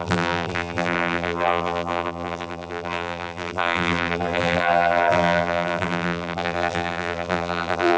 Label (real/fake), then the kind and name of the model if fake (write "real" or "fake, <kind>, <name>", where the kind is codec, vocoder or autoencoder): fake, vocoder, BigVGAN v2